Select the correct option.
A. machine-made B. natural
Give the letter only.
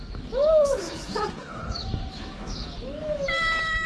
A